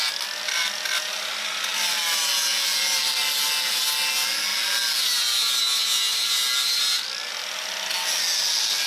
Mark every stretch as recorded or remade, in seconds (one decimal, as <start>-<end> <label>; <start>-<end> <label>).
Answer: 0.0-8.9 recorded